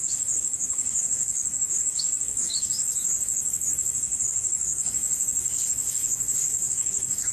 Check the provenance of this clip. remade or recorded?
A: remade